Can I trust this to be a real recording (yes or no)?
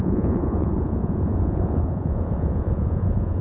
no